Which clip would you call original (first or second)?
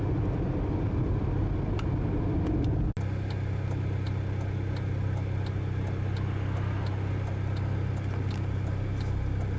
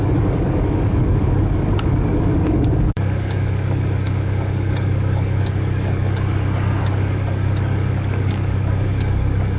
first